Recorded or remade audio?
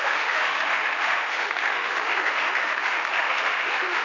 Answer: remade